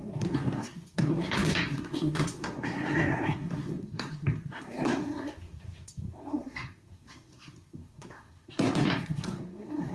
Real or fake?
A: fake